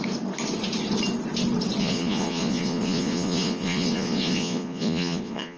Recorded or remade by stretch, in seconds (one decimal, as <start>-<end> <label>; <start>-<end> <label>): 0.0-1.8 recorded; 1.8-5.6 remade